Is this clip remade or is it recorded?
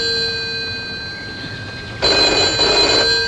recorded